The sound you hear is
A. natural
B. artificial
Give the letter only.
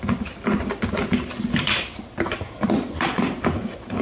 B